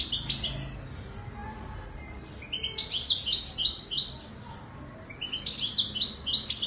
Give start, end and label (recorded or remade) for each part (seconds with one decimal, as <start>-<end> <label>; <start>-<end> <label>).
0.0-6.7 recorded